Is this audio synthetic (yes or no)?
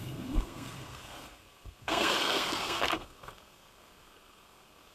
yes